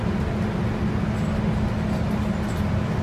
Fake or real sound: real